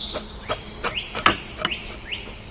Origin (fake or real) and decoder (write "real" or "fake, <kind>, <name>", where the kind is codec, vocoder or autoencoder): real